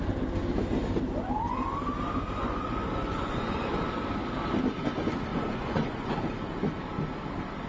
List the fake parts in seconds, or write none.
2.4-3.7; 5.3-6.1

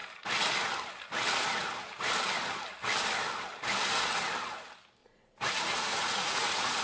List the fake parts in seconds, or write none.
5.0-6.8

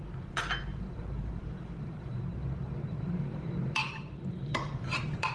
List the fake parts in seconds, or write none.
0.7-2.2; 3.8-5.3